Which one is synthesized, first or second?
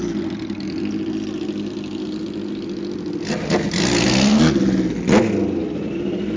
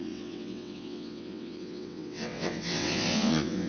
second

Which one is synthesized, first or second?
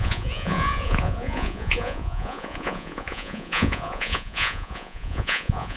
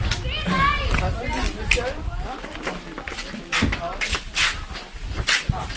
first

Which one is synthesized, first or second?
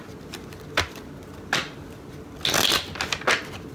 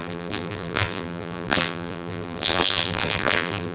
second